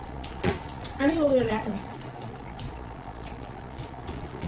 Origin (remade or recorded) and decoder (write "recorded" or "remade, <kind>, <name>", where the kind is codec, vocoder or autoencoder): remade, vocoder, Vocos